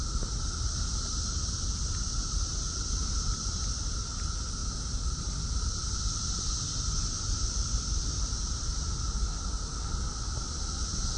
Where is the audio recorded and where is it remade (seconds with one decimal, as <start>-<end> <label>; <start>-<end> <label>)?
0.0-11.2 recorded